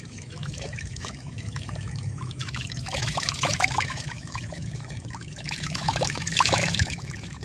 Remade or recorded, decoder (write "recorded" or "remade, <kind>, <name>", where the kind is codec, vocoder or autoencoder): remade, autoencoder, DAC-VAE